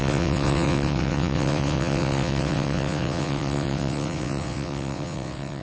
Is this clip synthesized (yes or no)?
yes